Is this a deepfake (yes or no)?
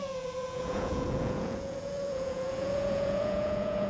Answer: yes